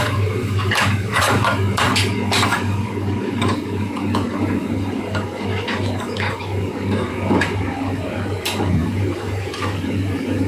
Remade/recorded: remade